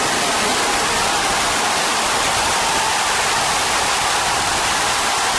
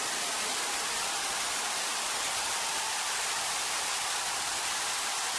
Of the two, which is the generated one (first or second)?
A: second